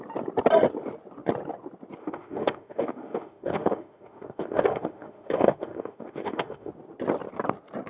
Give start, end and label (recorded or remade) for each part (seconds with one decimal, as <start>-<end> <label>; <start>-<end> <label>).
0.0-2.0 recorded; 2.0-6.7 remade; 6.7-7.9 recorded